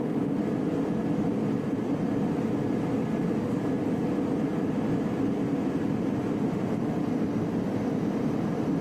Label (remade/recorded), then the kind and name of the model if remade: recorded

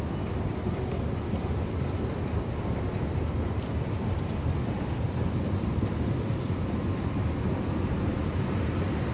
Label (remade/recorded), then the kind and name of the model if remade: recorded